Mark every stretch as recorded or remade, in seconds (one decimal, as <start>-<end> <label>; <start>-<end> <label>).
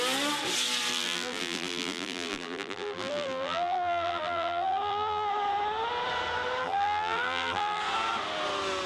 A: 0.0-0.9 recorded; 0.9-5.3 remade; 5.3-6.6 recorded; 6.6-7.8 remade; 7.8-8.9 recorded